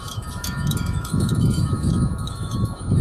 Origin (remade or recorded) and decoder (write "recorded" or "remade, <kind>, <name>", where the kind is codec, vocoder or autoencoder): remade, autoencoder, DAC-VAE